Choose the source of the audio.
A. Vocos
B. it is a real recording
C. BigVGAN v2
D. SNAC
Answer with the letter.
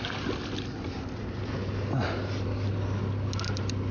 B